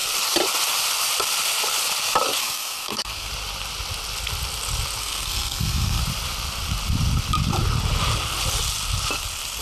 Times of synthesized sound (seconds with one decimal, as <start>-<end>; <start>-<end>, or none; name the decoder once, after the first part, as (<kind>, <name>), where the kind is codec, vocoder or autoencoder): 2.4-3.3 (codec, SNAC); 5.0-6.0